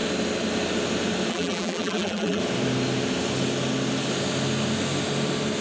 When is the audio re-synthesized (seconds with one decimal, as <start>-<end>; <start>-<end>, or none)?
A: 1.3-2.4